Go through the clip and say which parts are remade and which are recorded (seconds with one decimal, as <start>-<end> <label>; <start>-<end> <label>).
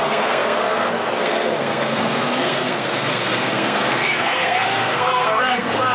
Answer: 0.0-5.9 remade